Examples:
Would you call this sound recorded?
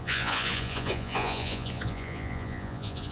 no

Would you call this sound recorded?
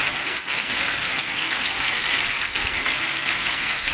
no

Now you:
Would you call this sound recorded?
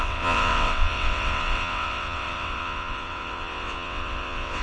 no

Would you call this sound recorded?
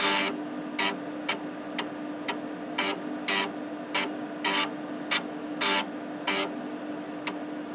yes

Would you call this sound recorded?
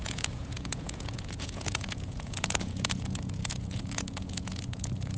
no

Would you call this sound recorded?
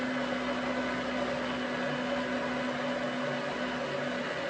yes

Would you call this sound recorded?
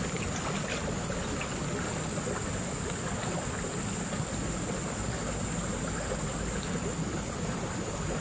yes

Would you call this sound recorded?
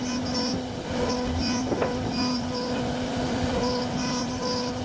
yes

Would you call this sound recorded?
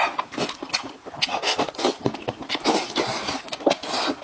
yes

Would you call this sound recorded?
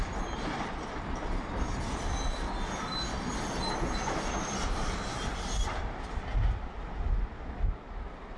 yes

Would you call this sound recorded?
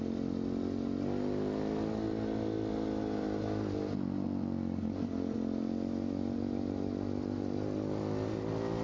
yes